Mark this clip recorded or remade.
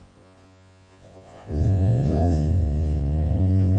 remade